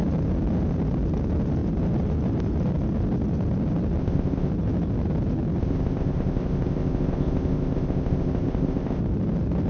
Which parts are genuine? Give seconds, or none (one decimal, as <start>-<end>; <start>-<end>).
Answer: 0.0-4.0; 4.5-5.6; 9.0-9.7